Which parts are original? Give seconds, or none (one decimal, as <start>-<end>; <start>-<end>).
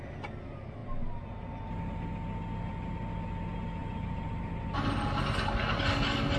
0.0-3.8; 4.5-6.4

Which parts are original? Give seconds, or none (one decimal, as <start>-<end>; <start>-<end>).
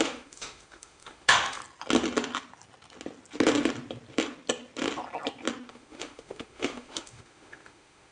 1.6-5.7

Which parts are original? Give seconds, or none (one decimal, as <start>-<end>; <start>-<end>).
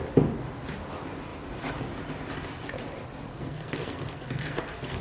0.0-3.3